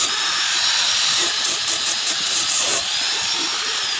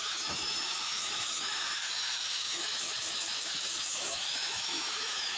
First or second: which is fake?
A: second